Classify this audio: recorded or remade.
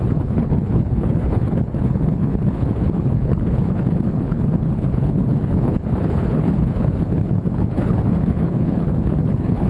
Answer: remade